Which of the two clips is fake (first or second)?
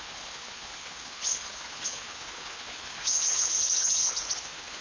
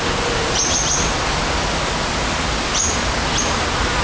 first